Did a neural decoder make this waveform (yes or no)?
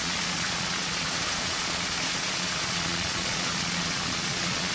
yes